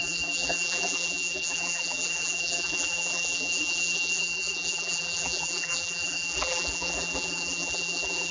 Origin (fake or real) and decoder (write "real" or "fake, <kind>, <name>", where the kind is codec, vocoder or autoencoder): fake, vocoder, BigVGAN v2